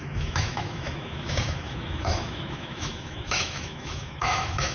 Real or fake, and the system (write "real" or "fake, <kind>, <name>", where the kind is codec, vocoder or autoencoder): fake, autoencoder, DAC-VAE